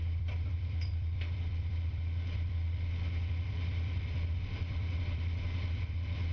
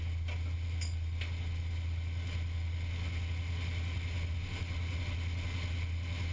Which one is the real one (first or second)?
second